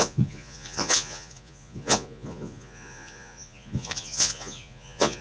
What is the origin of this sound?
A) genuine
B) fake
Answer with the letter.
B